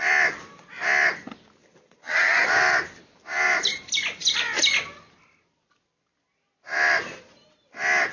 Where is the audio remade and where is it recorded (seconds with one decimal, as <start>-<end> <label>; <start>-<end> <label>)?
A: 0.0-8.1 recorded